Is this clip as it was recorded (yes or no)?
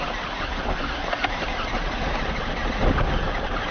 yes